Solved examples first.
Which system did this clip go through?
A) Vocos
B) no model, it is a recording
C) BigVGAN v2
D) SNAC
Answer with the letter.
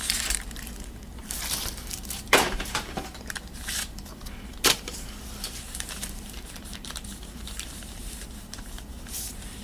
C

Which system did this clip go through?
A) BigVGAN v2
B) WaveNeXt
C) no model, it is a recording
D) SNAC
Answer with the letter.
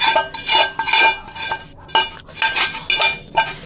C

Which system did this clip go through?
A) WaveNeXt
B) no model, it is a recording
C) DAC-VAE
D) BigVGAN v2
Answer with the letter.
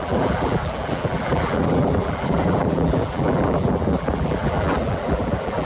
D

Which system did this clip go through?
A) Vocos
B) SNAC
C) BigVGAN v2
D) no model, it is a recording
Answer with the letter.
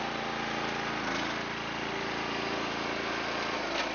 D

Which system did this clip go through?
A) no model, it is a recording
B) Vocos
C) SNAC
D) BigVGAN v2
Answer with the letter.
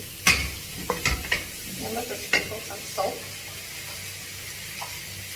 A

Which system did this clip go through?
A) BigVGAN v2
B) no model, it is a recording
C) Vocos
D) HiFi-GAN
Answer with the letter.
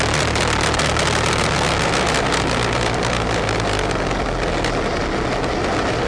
B